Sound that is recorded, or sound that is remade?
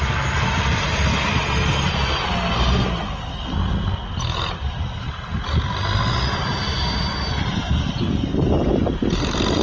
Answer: recorded